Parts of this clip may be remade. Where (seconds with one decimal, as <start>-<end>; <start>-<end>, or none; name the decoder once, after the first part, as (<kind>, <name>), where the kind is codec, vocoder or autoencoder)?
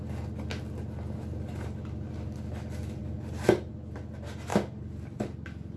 none